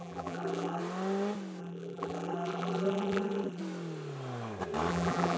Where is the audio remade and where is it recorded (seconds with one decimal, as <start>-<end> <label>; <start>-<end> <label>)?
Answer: 0.0-0.8 remade; 0.8-1.6 recorded; 1.6-3.6 remade; 3.6-4.9 recorded; 4.9-5.4 remade